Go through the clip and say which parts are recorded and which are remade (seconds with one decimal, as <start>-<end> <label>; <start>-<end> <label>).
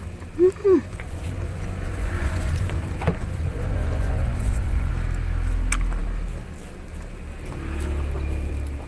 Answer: 0.0-0.6 recorded; 0.6-4.9 remade; 4.9-8.9 recorded